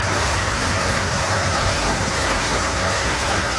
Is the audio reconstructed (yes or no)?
yes